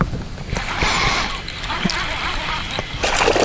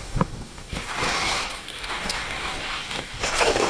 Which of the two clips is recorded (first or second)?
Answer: first